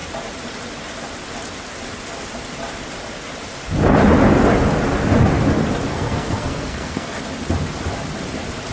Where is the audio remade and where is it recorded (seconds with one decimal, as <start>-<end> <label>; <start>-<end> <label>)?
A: 0.0-5.9 recorded; 5.9-7.2 remade; 7.2-8.7 recorded